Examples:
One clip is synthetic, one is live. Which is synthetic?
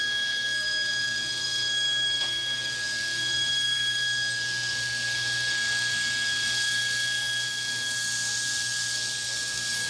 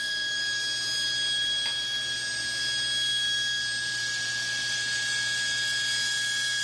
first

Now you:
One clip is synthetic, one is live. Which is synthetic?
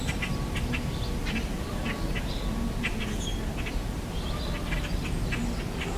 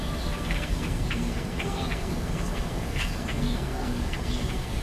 second